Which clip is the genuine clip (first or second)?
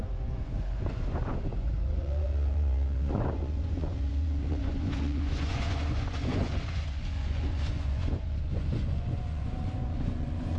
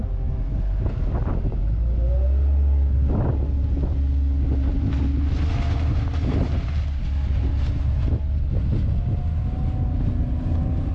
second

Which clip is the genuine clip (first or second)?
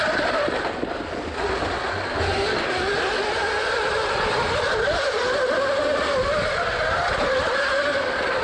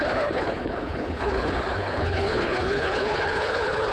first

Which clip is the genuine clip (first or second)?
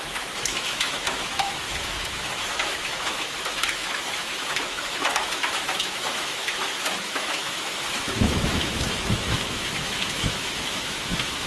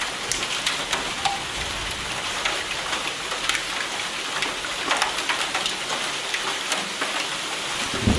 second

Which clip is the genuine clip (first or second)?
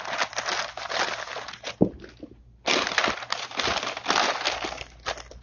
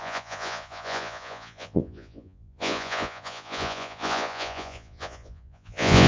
first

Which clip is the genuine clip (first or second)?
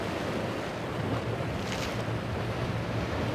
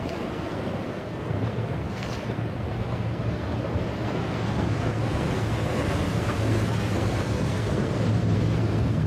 first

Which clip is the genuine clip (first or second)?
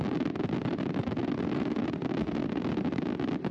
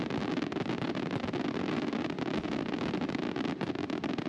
second